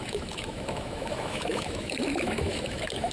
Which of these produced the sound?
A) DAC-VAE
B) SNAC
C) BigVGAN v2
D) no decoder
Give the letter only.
A